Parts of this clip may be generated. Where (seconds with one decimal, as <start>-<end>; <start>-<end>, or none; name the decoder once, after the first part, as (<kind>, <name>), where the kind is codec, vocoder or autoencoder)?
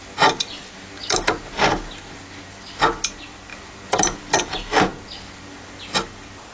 none